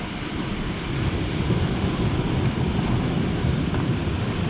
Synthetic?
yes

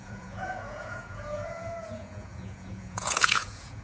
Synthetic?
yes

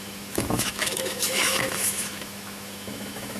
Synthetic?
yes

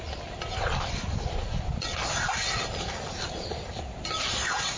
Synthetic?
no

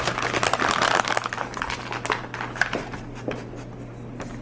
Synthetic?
no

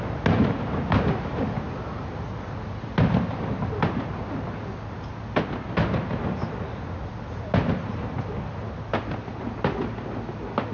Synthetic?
no